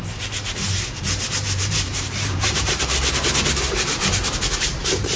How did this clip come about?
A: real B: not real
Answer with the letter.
B